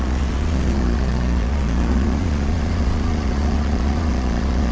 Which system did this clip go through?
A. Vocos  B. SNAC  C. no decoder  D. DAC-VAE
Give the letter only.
A